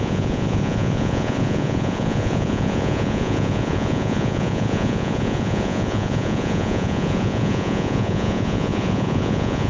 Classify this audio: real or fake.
fake